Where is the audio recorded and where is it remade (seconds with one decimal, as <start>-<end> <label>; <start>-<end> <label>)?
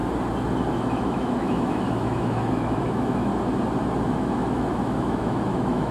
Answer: 0.0-0.7 recorded; 0.7-3.3 remade; 3.3-4.1 recorded; 4.1-5.9 remade